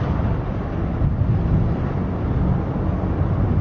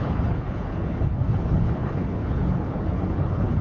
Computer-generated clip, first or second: second